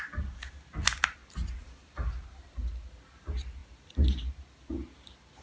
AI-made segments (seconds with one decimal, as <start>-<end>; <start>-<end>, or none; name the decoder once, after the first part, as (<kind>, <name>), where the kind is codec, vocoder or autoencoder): none